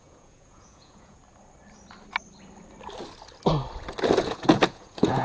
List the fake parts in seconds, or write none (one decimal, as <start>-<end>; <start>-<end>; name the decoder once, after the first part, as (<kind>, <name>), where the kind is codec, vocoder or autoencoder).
0.0-1.2 (vocoder, Vocos); 4.2-5.2